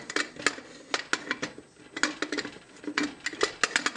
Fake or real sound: real